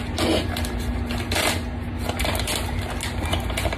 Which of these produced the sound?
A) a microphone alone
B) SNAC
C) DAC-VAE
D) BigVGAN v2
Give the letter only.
A